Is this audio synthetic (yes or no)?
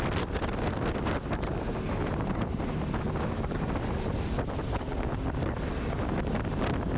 no